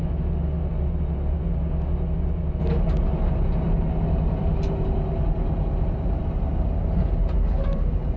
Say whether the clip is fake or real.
real